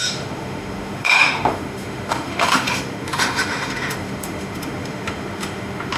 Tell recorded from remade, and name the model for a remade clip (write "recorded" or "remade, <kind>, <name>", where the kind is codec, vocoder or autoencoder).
remade, autoencoder, DAC-VAE